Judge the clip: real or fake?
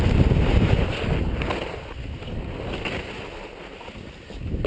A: real